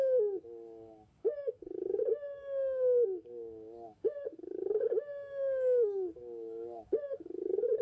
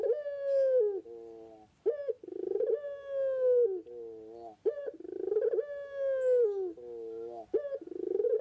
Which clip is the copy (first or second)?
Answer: first